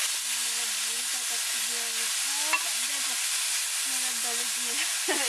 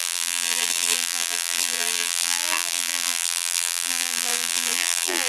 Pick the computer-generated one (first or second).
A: second